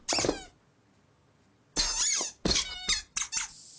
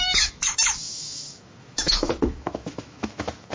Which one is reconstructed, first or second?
second